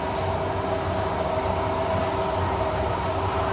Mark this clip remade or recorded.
recorded